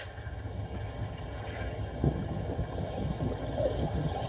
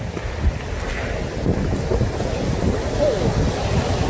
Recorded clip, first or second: second